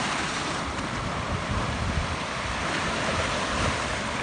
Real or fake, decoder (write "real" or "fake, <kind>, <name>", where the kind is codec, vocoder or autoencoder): fake, vocoder, BigVGAN v2